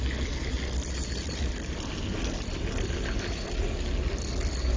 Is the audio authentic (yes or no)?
yes